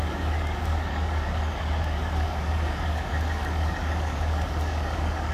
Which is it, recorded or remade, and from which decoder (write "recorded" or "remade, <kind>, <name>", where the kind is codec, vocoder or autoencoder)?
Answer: remade, codec, DAC